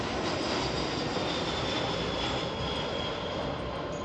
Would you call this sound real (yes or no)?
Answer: yes